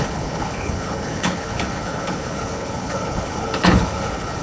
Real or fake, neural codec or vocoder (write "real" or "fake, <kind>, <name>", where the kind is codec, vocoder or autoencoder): fake, codec, HILCodec